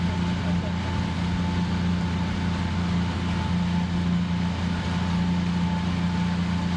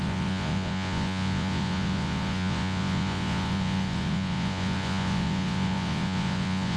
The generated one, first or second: second